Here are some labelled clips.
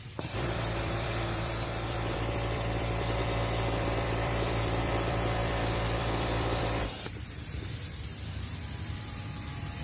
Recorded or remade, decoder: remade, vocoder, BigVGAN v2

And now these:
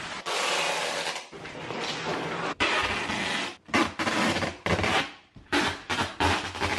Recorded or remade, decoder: recorded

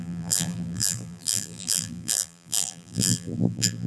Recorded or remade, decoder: remade, vocoder, BigVGAN v2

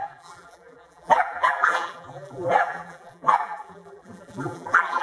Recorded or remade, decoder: remade, vocoder, BigVGAN v2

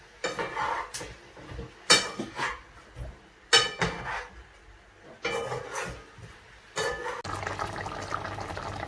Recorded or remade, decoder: recorded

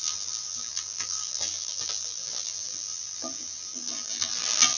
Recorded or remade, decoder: remade, vocoder, BigVGAN v2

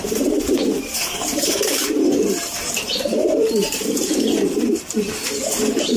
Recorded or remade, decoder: remade, vocoder, BigVGAN v2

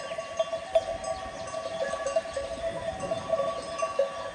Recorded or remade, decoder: recorded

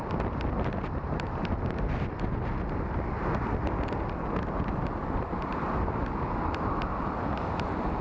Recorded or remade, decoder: recorded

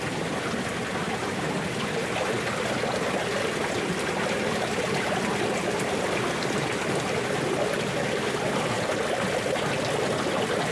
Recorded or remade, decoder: recorded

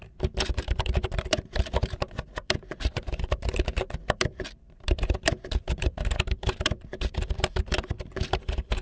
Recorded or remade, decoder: remade, vocoder, BigVGAN v2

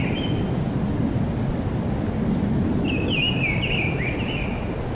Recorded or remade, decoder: remade, vocoder, BigVGAN v2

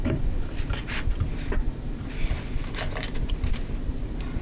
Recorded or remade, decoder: remade, vocoder, BigVGAN v2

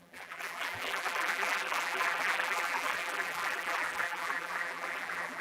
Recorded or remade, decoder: remade, vocoder, BigVGAN v2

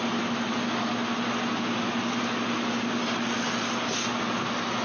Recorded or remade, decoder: recorded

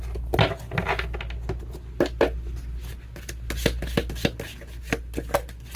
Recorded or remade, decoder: recorded